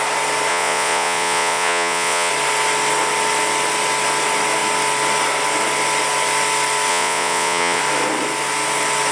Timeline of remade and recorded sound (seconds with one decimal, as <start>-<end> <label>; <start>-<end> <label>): 0.0-0.5 recorded; 0.5-2.3 remade; 2.3-6.9 recorded; 6.9-7.8 remade; 7.8-9.1 recorded